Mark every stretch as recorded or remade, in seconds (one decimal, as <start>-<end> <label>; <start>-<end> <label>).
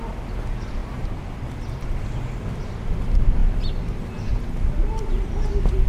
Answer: 0.0-0.8 recorded; 0.8-1.5 remade; 1.5-5.9 recorded